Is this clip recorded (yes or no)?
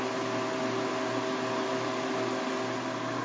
yes